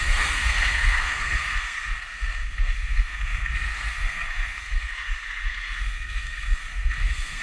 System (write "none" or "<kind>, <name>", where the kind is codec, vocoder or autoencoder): codec, SNAC